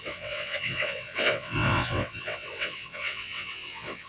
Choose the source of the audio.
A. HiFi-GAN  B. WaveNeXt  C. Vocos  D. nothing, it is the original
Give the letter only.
B